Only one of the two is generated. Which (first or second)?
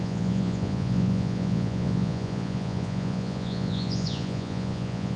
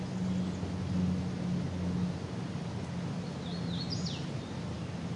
first